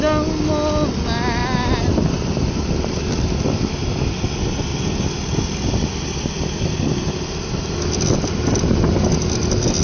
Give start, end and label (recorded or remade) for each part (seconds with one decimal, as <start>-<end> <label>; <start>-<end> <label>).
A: 0.0-9.8 recorded